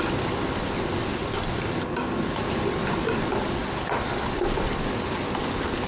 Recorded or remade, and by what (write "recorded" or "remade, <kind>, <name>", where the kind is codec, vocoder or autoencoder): recorded